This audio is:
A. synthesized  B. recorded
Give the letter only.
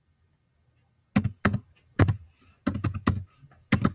B